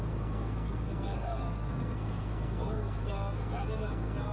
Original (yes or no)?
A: no